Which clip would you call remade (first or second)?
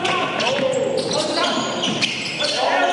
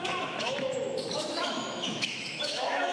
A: second